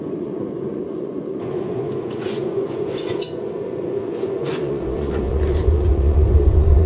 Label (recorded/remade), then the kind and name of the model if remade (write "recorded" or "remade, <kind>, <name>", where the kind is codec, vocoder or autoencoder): remade, vocoder, Vocos